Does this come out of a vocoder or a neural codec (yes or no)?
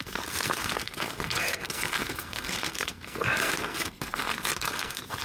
yes